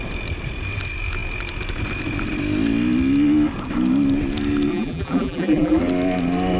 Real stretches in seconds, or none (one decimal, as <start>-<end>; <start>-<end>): 0.0-4.7; 5.8-6.6

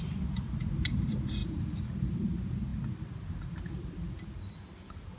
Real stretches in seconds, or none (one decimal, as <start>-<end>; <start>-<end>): 0.0-1.4; 2.2-5.2